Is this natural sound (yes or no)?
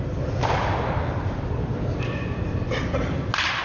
yes